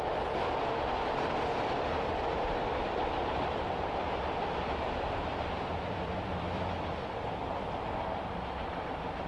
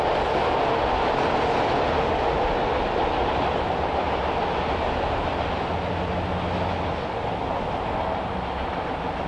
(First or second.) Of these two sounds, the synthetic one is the first